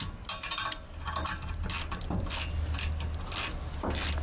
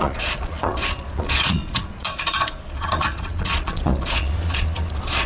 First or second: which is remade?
second